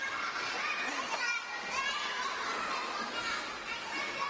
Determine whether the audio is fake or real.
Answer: real